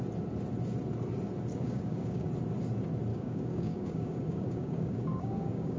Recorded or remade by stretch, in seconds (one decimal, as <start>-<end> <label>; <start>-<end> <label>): 0.0-1.5 recorded; 1.5-2.3 remade; 2.3-3.1 recorded; 3.1-5.8 remade